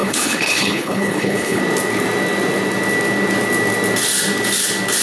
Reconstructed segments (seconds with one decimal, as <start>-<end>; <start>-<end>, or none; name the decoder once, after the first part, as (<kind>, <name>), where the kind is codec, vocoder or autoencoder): 0.0-1.6 (codec, HILCodec)